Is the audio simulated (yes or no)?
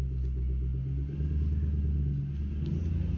no